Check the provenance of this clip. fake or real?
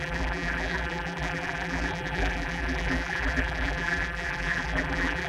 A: fake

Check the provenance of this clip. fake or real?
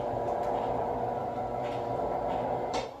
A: fake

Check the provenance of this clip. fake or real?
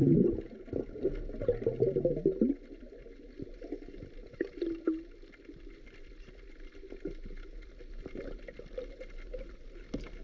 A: real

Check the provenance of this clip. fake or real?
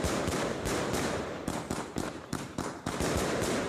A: fake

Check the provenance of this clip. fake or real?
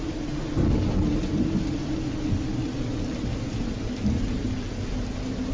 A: real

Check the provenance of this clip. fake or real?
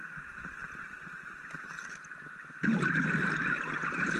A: real